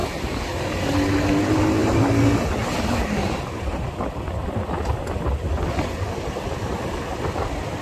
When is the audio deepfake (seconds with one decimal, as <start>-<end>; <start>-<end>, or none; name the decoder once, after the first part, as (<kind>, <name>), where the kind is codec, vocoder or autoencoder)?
0.0-0.6 (vocoder, BigVGAN v2)